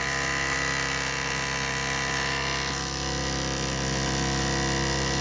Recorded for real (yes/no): yes